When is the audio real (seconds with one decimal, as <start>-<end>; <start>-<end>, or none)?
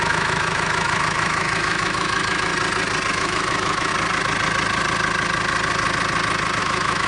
2.5-3.1; 3.9-6.6